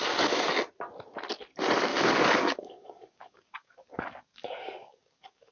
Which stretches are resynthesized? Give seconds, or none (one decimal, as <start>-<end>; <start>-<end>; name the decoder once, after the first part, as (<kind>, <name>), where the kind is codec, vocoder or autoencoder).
0.0-0.5 (codec, DAC); 1.9-5.5